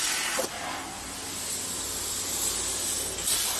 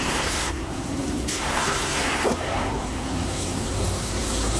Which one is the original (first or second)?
first